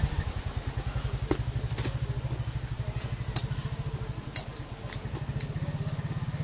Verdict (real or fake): real